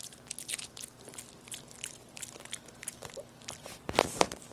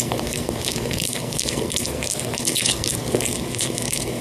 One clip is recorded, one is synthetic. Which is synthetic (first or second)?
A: second